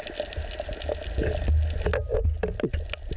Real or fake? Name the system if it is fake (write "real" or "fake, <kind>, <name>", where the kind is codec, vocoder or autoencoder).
real